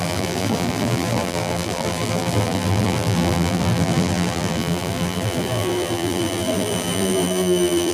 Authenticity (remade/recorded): remade